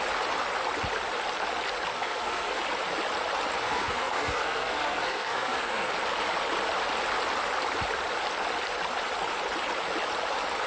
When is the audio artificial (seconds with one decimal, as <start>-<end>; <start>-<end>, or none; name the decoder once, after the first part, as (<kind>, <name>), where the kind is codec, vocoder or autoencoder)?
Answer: 1.9-2.6 (codec, SNAC); 3.6-5.9